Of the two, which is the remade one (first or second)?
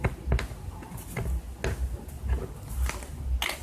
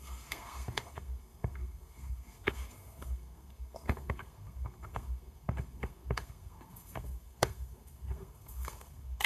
second